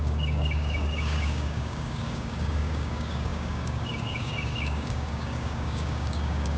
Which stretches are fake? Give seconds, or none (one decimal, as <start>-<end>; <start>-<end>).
0.0-6.6